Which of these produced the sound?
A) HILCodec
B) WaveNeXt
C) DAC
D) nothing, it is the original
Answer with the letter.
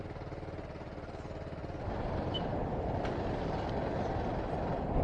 D